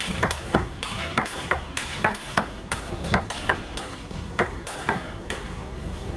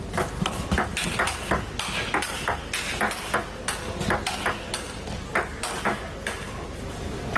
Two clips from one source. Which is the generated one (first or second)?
first